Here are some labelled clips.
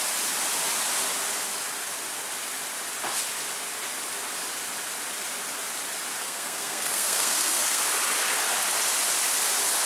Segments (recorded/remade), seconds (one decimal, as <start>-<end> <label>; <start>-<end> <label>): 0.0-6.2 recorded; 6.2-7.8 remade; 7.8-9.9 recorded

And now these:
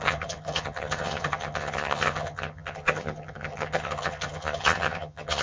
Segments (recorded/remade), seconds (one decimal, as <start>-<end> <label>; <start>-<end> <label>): 0.0-5.4 remade

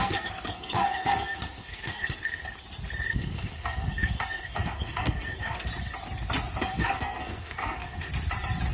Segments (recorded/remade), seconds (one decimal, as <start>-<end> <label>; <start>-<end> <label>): 0.0-2.4 remade; 2.4-3.1 recorded; 3.1-5.7 remade; 5.7-6.6 recorded; 6.6-8.1 remade; 8.1-8.7 recorded